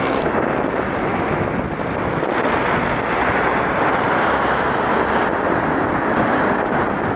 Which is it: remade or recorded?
recorded